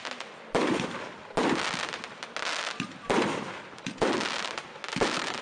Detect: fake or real real